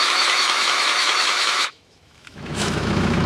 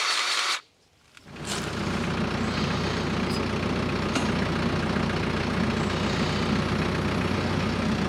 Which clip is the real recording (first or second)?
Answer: second